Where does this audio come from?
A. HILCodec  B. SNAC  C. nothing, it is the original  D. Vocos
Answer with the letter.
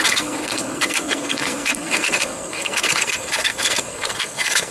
B